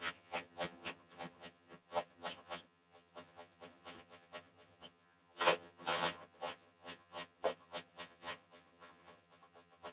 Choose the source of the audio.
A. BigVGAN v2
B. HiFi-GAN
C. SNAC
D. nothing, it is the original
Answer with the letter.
B